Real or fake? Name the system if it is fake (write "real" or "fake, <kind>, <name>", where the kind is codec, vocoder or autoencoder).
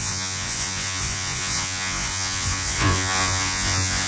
fake, vocoder, Vocos